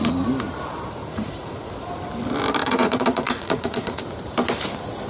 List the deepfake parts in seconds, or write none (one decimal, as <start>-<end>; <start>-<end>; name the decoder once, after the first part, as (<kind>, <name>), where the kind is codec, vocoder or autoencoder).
1.0-1.7 (vocoder, Vocos); 2.6-4.0